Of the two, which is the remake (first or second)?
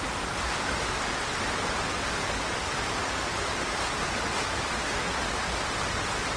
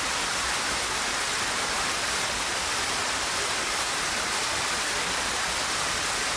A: second